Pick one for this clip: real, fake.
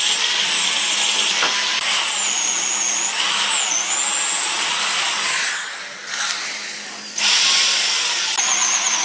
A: real